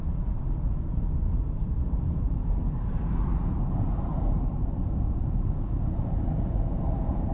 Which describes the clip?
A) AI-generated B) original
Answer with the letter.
A